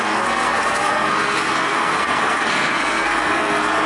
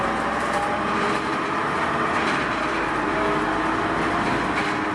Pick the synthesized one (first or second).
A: first